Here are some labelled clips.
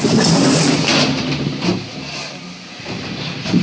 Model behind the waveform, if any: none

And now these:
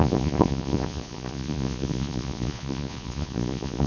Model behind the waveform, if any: vocoder, Vocos